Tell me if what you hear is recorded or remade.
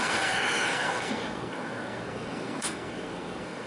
remade